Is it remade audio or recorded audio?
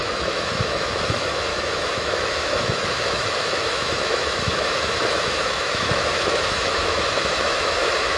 remade